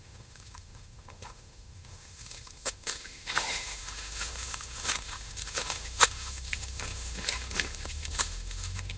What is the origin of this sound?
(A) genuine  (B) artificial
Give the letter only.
B